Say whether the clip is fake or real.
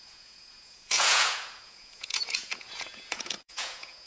fake